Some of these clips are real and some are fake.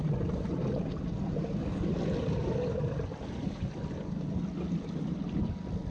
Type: real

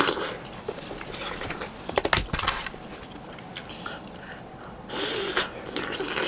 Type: real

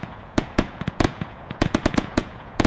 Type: fake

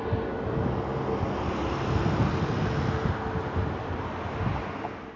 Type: real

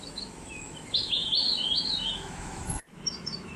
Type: fake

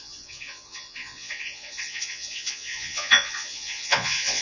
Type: fake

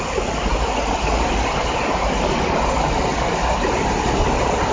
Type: real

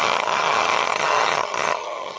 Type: fake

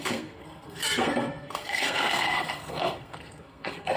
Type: fake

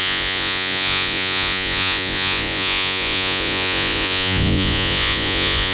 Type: fake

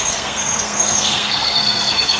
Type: fake